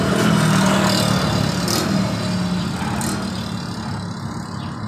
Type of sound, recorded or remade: recorded